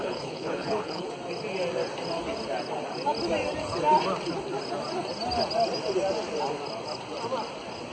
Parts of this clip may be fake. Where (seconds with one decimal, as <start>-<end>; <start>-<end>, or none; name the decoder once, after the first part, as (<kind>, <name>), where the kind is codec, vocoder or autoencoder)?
0.0-1.1 (codec, HILCodec)